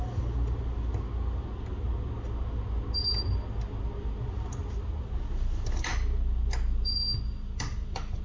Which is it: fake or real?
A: real